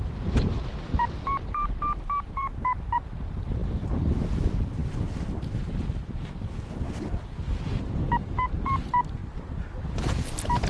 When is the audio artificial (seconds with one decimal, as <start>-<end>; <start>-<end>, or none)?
0.0-4.8; 6.7-10.7